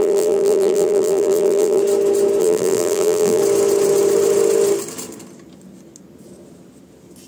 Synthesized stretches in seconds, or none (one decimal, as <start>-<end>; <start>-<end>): 0.0-1.8; 2.4-3.4